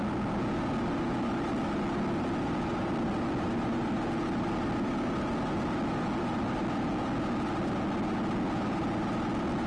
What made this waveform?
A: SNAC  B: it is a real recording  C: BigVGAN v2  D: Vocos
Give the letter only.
B